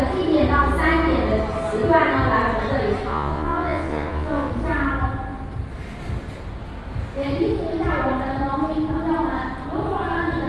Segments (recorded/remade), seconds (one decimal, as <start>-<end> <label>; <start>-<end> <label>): 0.0-3.1 recorded; 3.1-4.5 remade; 4.5-10.5 recorded